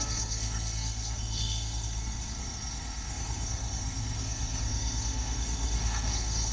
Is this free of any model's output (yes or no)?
no